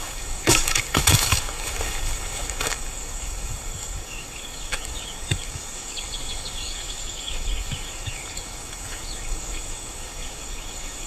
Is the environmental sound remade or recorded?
remade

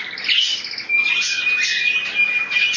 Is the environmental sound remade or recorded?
recorded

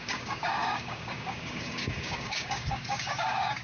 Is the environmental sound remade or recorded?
remade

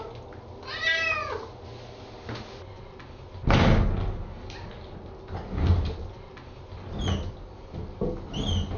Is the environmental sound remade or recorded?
recorded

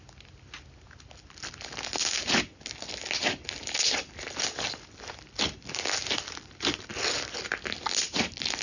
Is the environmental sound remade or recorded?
recorded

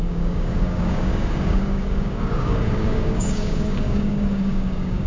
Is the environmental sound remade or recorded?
remade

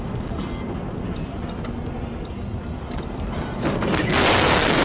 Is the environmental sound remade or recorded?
recorded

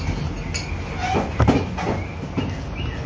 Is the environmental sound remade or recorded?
recorded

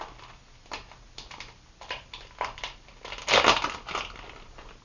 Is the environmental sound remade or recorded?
recorded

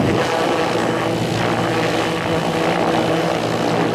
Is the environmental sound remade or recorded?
recorded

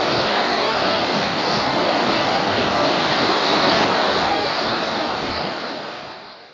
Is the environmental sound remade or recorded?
remade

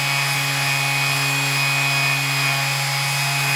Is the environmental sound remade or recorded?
recorded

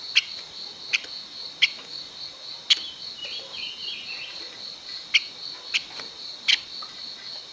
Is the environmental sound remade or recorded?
recorded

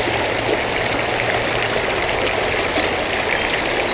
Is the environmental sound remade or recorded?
recorded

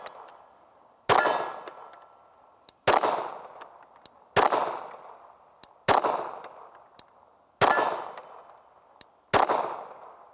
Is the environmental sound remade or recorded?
recorded